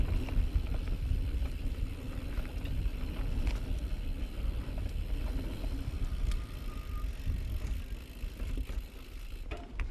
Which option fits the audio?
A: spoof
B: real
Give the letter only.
B